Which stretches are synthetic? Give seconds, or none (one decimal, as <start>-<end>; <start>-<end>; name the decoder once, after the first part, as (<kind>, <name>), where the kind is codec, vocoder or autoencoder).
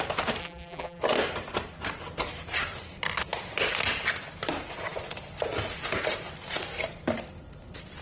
0.4-1.0 (vocoder, BigVGAN v2)